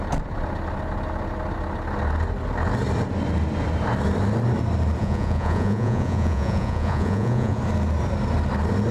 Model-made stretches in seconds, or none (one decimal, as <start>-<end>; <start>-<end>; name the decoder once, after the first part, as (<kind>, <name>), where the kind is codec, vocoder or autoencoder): 5.0-7.6 (vocoder, Vocos)